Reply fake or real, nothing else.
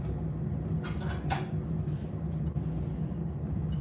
real